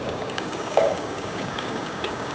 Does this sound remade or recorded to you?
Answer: remade